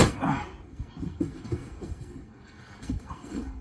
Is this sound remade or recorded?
remade